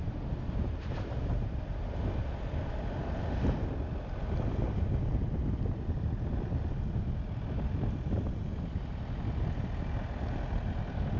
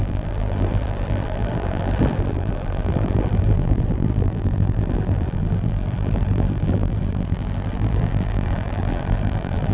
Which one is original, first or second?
first